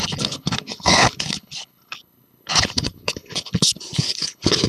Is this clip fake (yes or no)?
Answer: yes